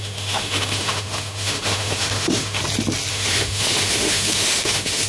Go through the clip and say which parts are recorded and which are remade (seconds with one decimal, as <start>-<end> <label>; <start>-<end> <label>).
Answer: 0.0-2.6 remade; 2.6-3.1 recorded; 3.1-5.1 remade